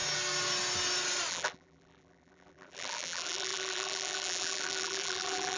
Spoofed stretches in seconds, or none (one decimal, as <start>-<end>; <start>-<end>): 1.3-5.6